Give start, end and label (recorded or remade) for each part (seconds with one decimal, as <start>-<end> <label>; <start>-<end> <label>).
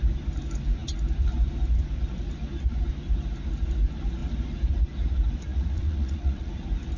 0.0-5.5 recorded; 5.5-6.5 remade; 6.5-7.0 recorded